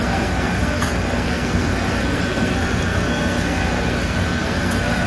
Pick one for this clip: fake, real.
fake